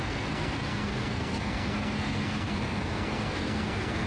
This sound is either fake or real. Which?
fake